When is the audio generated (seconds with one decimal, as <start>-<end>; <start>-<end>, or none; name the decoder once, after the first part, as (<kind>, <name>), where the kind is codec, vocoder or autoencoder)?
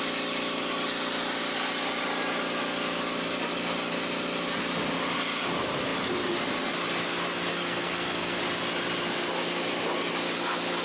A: 7.5-8.4 (codec, SNAC)